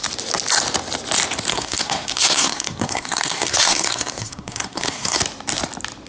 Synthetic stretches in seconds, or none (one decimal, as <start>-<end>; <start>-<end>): 1.5-5.2